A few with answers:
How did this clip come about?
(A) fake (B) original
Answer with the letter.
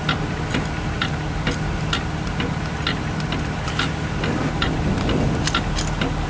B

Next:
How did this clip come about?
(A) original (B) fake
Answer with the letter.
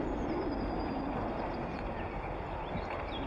A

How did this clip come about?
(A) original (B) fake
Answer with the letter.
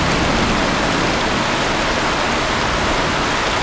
A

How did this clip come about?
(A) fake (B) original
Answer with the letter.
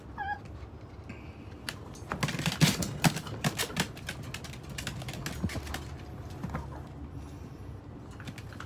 B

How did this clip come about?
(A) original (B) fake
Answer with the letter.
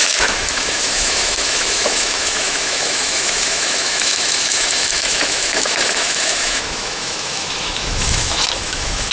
B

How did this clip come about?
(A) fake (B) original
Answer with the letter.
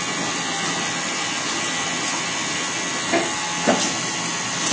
B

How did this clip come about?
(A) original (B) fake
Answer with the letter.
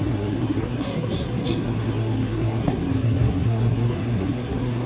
B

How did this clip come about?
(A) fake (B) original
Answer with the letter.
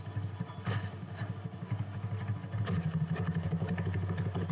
B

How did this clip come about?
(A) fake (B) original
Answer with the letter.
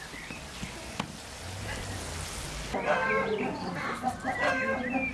B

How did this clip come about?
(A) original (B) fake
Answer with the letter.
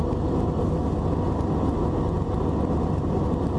A